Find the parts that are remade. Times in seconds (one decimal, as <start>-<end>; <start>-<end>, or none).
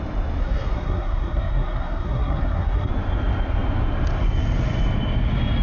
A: 0.4-2.9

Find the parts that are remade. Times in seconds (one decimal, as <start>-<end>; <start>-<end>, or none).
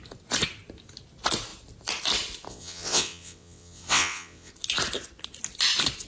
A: 2.5-4.5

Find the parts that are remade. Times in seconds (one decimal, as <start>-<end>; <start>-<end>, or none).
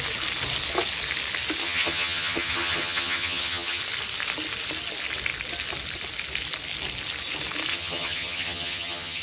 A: 1.6-3.8; 7.7-9.2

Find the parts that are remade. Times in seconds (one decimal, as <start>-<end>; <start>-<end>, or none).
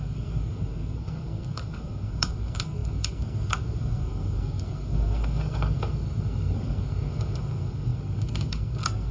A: 0.0-9.1